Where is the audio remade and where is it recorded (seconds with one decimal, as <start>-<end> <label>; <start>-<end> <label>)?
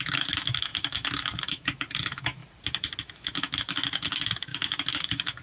0.0-2.4 remade; 2.4-3.0 recorded; 3.0-5.4 remade